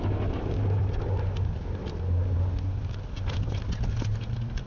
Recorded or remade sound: recorded